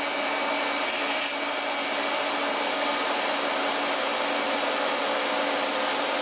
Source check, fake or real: real